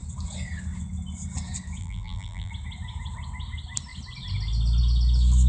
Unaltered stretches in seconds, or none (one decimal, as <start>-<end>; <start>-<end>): 0.0-1.8; 2.5-5.5